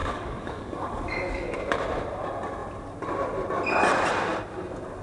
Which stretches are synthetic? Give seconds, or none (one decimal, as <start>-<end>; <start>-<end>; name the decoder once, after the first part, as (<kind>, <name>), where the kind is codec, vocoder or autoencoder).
0.0-1.6 (codec, DAC)